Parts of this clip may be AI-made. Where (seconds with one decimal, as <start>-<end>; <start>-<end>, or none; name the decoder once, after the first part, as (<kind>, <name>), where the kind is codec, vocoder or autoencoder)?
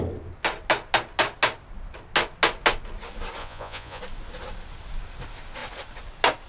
3.4-4.0 (vocoder, Vocos)